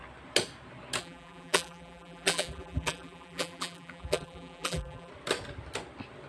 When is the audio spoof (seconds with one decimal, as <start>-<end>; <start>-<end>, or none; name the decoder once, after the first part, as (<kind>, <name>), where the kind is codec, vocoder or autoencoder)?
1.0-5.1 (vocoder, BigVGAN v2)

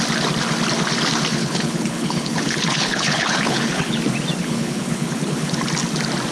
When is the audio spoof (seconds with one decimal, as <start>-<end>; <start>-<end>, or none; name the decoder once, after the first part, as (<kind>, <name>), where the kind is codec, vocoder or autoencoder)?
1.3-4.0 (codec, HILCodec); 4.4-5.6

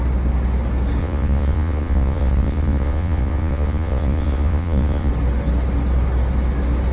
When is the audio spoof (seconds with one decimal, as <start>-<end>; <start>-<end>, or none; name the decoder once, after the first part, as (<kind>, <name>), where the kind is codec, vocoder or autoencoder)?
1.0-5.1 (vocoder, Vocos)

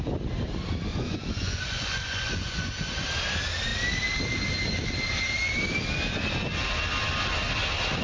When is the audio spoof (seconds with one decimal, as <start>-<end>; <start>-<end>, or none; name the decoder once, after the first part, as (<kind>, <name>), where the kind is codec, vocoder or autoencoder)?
0.9-2.7 (vocoder, Vocos)